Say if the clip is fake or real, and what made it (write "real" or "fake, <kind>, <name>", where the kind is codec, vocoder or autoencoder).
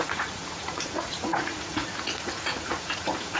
fake, vocoder, Vocos